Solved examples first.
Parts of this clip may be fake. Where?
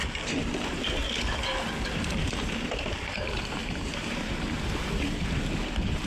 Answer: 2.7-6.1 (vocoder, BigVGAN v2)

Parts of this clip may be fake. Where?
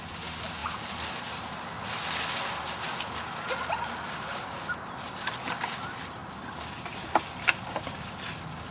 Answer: none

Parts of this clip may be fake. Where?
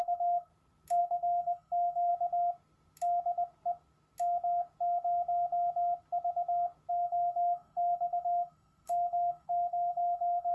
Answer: 0.0-0.5 (codec, SNAC); 1.0-2.1; 6.9-10.5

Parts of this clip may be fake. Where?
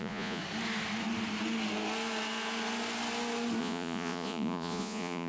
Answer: 0.0-0.4 (vocoder, Vocos); 3.6-5.3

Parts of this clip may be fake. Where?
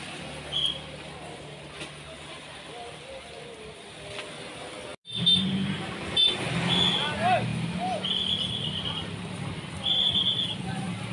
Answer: none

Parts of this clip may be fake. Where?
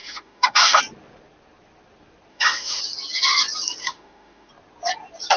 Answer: 0.0-0.8 (autoencoder, DAC-VAE); 2.3-2.8; 3.8-4.5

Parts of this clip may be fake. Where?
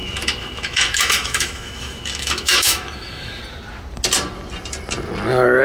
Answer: 0.0-3.4 (autoencoder, DAC-VAE)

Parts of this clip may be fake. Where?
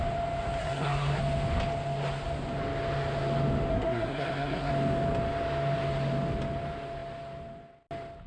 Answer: 0.6-1.2 (codec, SNAC); 3.7-4.7